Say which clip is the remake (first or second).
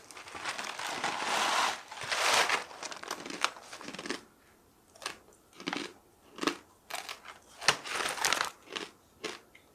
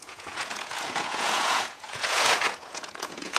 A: second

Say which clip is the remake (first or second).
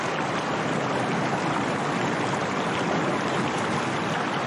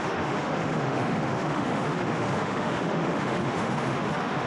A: second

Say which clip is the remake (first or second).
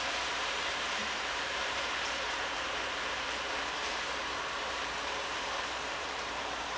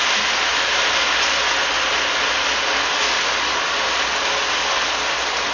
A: first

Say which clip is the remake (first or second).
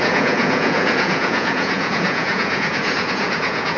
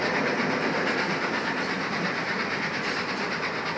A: first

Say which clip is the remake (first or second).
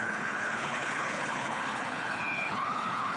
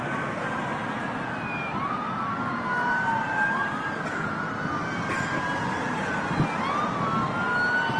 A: first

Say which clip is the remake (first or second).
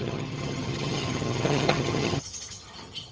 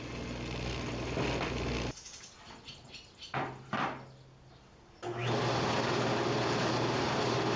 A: first